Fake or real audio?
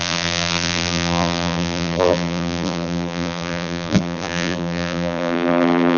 fake